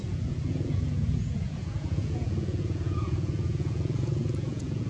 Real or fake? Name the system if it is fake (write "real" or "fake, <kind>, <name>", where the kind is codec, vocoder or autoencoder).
fake, vocoder, Vocos